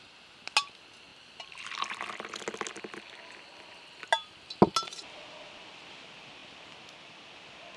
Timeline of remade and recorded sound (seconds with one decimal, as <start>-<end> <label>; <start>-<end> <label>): 0.0-7.8 recorded